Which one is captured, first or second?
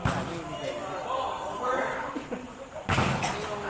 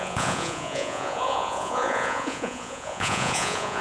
first